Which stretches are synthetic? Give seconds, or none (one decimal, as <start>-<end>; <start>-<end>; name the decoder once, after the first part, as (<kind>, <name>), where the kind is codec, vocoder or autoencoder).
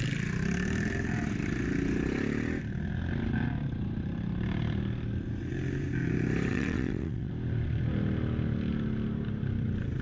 6.5-7.3 (vocoder, WaveNeXt)